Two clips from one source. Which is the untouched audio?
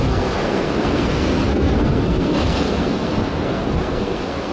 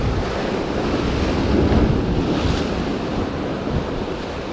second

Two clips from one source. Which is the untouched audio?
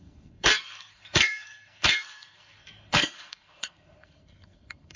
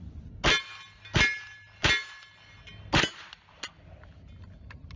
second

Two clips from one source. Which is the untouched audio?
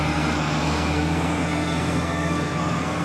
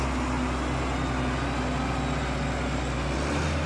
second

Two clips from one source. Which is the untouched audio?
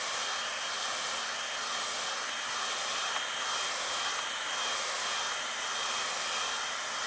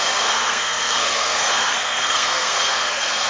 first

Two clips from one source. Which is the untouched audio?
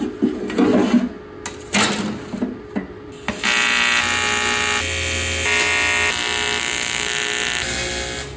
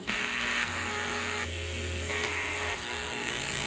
first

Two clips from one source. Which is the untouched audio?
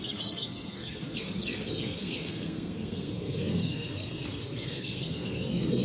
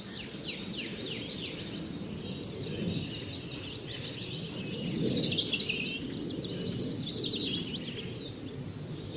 second